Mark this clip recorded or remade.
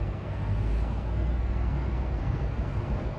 remade